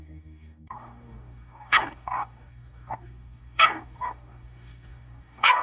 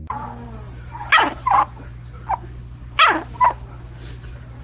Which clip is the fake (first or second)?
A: first